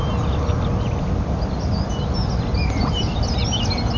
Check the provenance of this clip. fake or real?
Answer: real